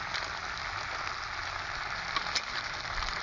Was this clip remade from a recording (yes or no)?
no